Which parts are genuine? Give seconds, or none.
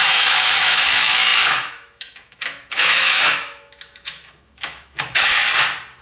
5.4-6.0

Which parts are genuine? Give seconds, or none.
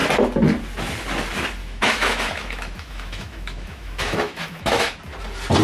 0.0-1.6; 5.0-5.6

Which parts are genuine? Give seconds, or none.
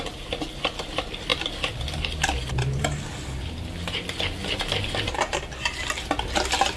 0.0-6.8